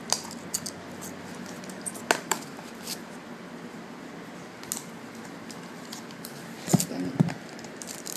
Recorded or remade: recorded